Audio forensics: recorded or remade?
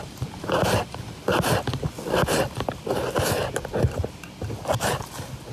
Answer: recorded